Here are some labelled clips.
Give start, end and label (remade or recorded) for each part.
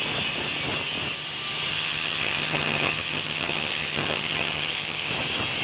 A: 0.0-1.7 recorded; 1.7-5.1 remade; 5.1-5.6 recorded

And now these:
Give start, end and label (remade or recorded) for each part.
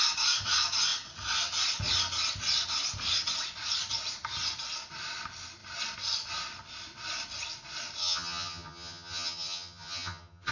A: 0.0-8.0 recorded; 8.0-10.5 remade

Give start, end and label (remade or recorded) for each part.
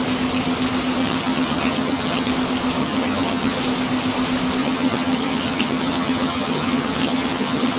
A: 0.0-1.0 recorded; 1.0-2.3 remade; 2.3-2.8 recorded; 2.8-3.6 remade; 3.6-4.6 recorded; 4.6-7.8 remade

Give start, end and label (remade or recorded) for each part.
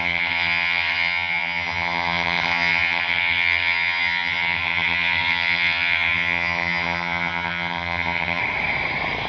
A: 0.0-8.4 remade; 8.4-9.3 recorded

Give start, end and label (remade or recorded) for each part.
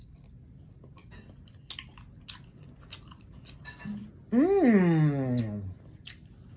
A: 0.0-6.6 recorded